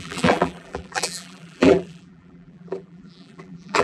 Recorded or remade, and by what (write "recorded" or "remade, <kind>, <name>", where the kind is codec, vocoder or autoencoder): remade, vocoder, BigVGAN v2